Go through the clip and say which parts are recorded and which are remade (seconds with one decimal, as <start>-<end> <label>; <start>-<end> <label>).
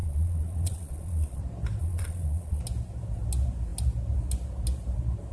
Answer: 0.0-1.4 remade; 1.4-1.8 recorded; 1.8-2.6 remade; 2.6-5.3 recorded